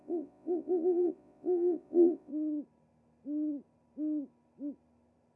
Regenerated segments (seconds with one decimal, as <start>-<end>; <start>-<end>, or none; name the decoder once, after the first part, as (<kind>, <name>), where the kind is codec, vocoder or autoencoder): 0.0-2.3 (vocoder, Vocos)